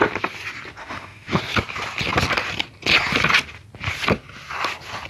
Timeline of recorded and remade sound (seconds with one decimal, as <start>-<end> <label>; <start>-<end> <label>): 0.0-0.8 recorded; 0.8-1.4 remade; 1.4-5.1 recorded